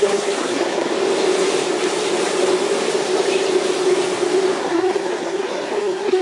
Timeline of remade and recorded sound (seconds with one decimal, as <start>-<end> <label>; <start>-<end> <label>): 0.0-0.9 remade; 0.9-4.6 recorded; 4.6-6.2 remade